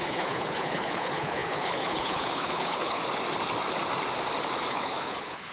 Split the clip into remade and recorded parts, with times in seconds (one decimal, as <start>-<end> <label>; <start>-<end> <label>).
0.0-3.0 remade; 3.0-4.7 recorded; 4.7-5.5 remade